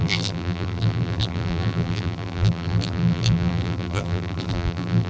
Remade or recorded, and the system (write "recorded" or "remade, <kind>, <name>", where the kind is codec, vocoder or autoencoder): remade, vocoder, BigVGAN v2